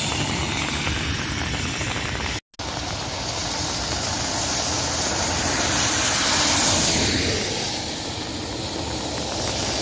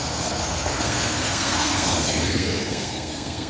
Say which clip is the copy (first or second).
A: second